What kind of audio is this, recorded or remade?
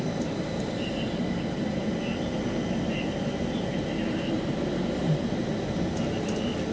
recorded